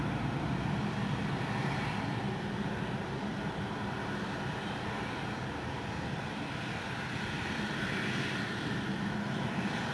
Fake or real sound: real